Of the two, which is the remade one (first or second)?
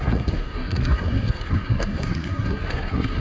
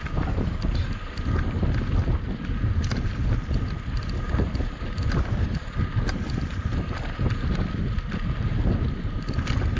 first